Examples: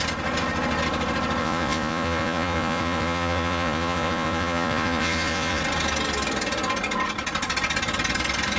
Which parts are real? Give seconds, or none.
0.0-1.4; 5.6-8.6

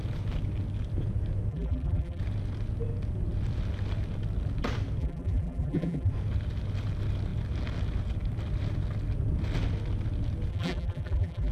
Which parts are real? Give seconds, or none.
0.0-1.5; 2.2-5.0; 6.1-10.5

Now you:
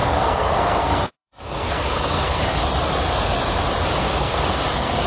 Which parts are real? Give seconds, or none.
2.4-4.0

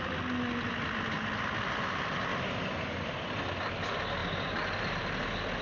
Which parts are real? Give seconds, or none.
0.0-5.6

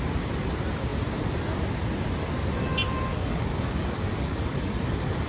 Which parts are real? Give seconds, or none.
0.0-3.1

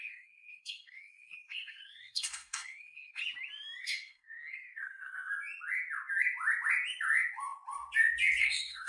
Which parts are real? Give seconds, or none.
3.2-3.8; 5.3-8.4